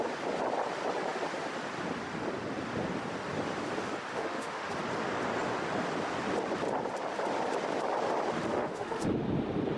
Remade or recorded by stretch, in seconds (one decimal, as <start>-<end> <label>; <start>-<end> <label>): 0.0-4.1 recorded; 4.1-4.7 remade; 4.7-8.5 recorded; 8.5-9.1 remade; 9.1-9.8 recorded